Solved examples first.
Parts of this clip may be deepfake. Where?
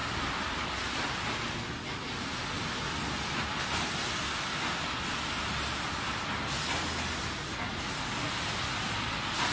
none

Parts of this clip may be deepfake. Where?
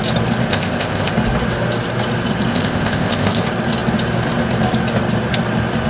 0.5-1.1 (codec, ZipCodec); 2.5-3.4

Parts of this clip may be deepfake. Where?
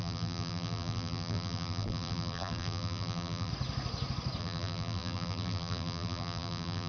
0.0-3.5 (vocoder, BigVGAN v2); 4.4-6.9